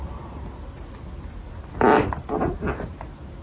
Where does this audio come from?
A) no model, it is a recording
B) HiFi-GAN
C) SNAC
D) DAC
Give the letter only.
A